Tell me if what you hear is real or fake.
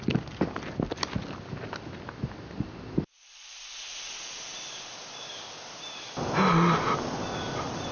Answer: real